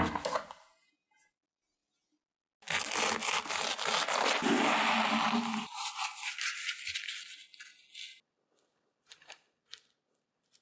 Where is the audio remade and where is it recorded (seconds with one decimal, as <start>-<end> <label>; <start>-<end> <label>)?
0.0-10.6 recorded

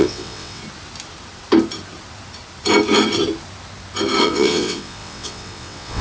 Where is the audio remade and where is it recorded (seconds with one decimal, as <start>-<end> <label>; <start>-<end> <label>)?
0.0-0.6 remade; 0.6-4.2 recorded; 4.2-6.0 remade

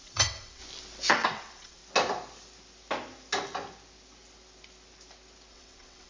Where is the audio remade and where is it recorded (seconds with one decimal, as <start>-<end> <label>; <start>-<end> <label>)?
0.0-0.6 remade; 0.6-1.1 recorded; 1.1-1.8 remade; 1.8-5.5 recorded; 5.5-6.1 remade